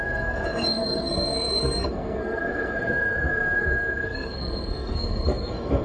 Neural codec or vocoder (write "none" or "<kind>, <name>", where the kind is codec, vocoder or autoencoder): codec, SNAC